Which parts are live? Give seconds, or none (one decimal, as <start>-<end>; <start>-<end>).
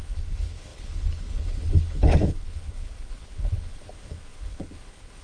none